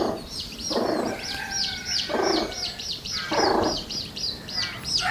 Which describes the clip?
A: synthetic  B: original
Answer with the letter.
A